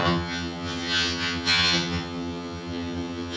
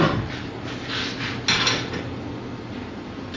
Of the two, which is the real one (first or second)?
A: second